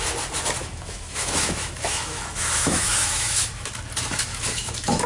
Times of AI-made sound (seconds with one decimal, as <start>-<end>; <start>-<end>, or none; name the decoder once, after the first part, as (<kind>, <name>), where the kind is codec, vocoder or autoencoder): 0.6-3.7 (autoencoder, DAC-VAE); 4.3-5.1

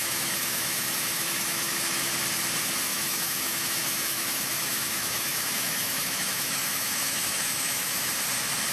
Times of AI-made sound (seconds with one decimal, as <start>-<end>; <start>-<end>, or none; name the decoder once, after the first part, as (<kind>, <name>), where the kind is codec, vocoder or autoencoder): 0.0-2.1 (autoencoder, DAC-VAE); 2.9-8.1